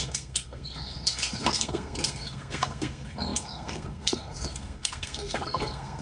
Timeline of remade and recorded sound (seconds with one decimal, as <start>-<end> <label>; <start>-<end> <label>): 0.0-6.0 remade